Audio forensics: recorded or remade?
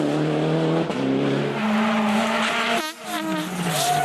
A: recorded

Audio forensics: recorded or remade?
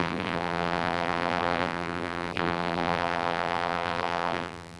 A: remade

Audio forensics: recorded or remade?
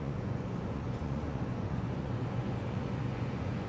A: remade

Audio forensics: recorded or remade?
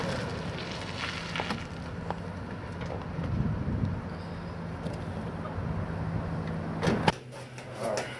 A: recorded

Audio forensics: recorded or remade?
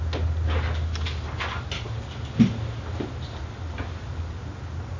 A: recorded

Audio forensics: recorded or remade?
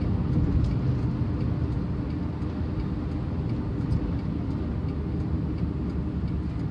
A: recorded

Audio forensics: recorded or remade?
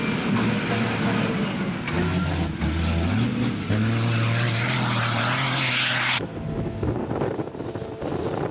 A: recorded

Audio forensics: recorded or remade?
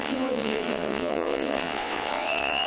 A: remade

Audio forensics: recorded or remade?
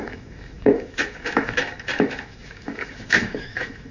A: remade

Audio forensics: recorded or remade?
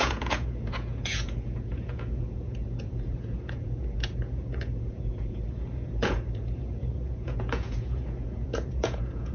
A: remade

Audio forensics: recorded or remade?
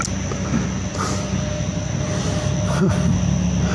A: recorded